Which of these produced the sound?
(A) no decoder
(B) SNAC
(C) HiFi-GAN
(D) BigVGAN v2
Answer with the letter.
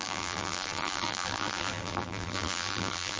D